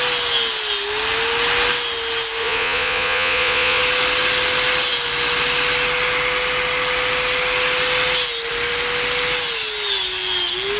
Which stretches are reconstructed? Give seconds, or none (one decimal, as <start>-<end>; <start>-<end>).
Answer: 2.4-3.8